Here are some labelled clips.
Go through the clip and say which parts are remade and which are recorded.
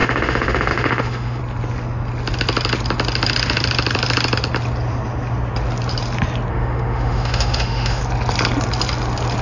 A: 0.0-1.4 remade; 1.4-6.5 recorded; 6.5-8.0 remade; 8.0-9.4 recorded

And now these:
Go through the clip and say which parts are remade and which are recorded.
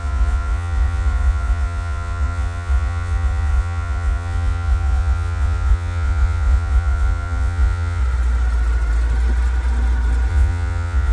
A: 0.0-8.0 remade; 8.0-10.3 recorded; 10.3-11.1 remade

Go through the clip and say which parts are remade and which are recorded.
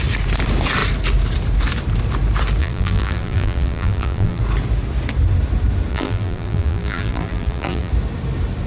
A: 0.0-2.6 recorded; 2.6-4.4 remade; 4.4-5.9 recorded; 5.9-7.9 remade; 7.9-8.7 recorded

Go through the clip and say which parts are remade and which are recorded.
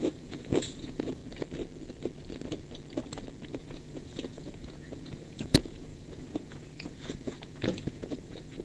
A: 0.0-1.2 remade; 1.2-3.6 recorded; 3.6-8.6 remade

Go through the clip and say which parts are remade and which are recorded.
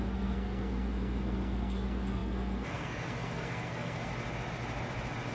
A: 0.0-4.1 remade; 4.1-5.3 recorded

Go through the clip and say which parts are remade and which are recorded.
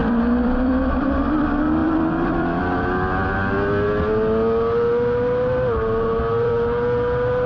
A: 0.0-0.8 remade; 0.8-1.8 recorded; 1.8-2.8 remade; 2.8-7.5 recorded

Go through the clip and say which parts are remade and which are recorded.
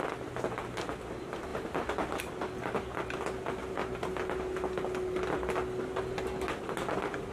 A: 0.0-7.3 recorded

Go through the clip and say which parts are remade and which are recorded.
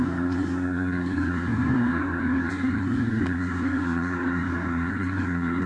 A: 0.0-5.7 remade